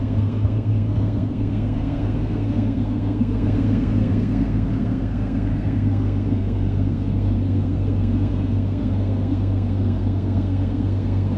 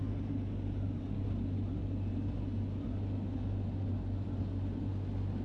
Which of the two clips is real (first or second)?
second